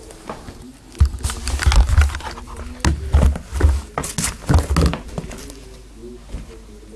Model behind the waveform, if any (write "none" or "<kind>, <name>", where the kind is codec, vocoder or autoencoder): none